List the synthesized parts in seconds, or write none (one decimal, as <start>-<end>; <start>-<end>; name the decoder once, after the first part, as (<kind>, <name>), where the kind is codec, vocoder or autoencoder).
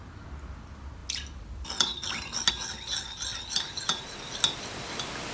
none